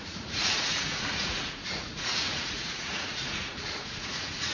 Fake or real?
fake